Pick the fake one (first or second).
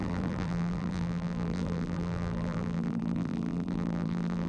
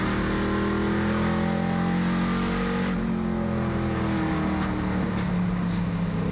first